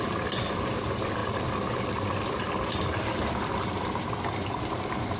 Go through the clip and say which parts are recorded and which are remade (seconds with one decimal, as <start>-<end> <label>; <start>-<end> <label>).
0.0-5.2 remade